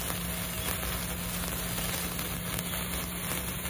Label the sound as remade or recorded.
recorded